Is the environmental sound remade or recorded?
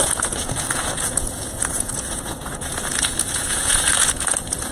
remade